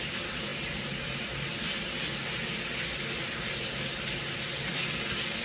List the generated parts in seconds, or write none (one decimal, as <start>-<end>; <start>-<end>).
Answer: none